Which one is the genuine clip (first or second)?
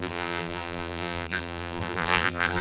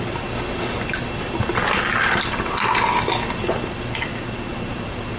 second